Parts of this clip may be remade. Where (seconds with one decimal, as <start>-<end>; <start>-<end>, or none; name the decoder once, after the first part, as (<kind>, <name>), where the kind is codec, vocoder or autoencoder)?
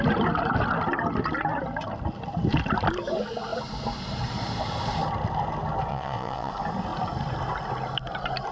5.9-6.5 (vocoder, WaveNeXt)